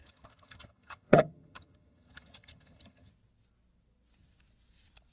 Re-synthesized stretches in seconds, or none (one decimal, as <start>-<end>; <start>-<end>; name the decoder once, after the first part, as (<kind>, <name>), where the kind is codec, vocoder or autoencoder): 0.0-3.1 (vocoder, HiFi-GAN)